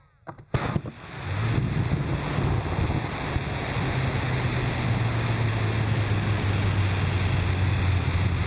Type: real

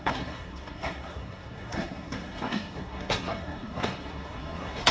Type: fake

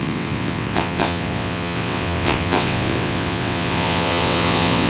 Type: fake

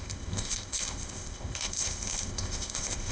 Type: fake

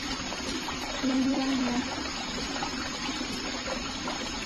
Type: fake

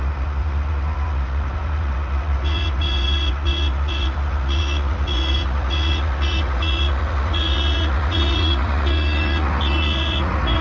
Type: fake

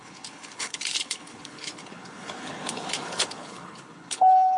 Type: fake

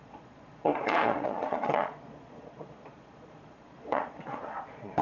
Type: fake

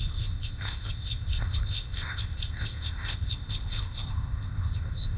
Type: fake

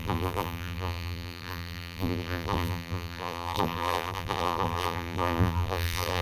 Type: fake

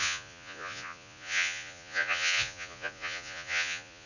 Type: fake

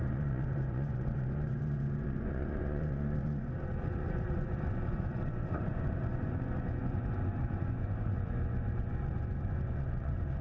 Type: fake